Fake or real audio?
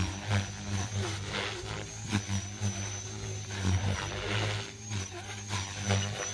real